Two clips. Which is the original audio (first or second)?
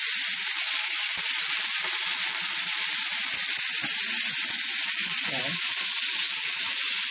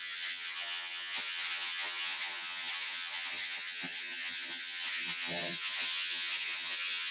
first